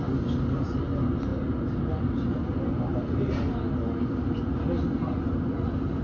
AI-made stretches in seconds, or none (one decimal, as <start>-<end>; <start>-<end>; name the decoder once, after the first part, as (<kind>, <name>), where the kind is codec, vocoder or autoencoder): none